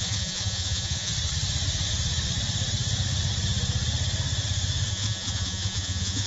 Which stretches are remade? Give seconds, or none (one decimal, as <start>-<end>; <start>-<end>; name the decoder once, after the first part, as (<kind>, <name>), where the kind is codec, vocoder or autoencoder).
0.0-1.1 (vocoder, Vocos); 4.9-6.3